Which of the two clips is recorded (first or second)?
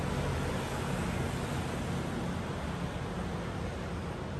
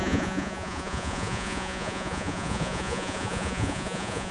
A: first